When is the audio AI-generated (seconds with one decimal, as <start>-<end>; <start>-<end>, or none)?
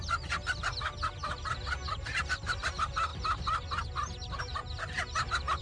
none